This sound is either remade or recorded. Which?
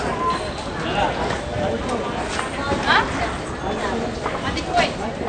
recorded